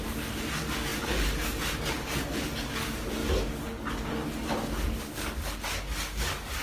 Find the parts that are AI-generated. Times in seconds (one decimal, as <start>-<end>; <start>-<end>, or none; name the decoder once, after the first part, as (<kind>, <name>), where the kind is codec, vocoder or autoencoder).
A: 0.0-6.6 (codec, DAC)